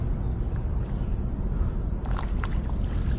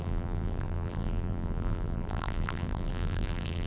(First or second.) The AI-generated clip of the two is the second